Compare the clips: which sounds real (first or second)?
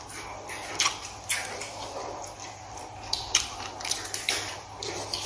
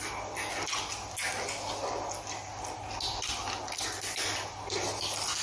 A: second